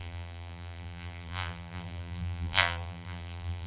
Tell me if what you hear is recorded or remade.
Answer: remade